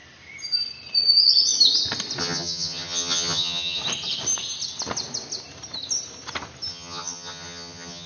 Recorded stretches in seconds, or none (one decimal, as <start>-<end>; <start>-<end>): 0.0-2.2; 3.8-6.7